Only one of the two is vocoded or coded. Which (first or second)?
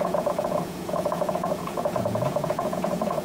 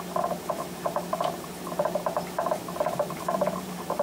first